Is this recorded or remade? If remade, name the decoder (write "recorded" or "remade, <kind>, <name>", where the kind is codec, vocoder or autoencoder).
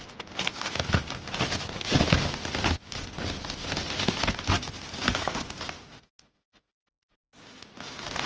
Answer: recorded